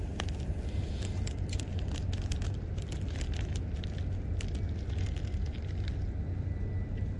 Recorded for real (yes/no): yes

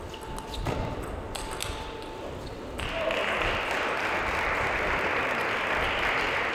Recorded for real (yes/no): yes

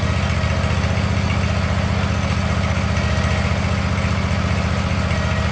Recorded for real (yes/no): yes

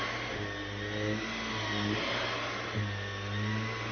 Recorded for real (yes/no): yes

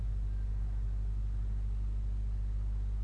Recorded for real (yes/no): yes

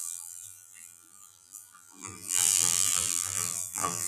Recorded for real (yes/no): no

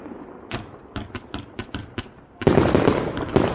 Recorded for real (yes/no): yes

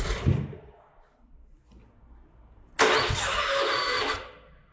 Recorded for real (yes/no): yes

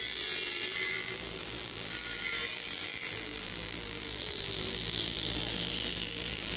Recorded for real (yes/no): no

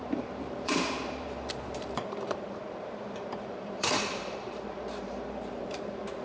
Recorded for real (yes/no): no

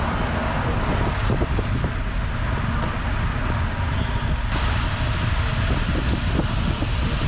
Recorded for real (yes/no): yes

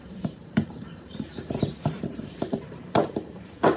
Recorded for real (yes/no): no